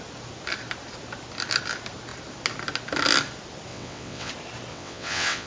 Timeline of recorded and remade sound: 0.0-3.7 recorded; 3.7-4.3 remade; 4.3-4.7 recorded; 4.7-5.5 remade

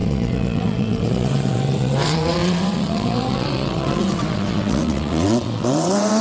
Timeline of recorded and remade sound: 0.0-6.2 remade